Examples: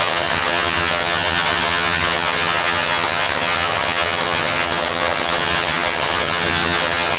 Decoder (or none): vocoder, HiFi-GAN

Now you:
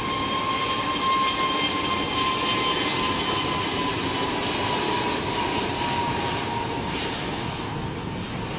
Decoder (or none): none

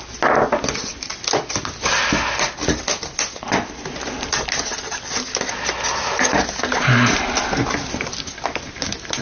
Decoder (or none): none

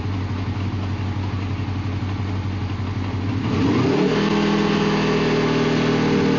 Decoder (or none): none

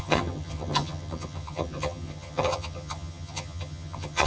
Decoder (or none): vocoder, HiFi-GAN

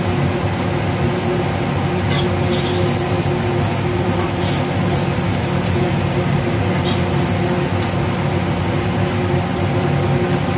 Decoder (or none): none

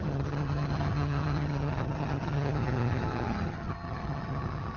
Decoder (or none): vocoder, HiFi-GAN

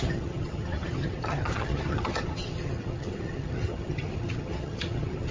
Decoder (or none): vocoder, HiFi-GAN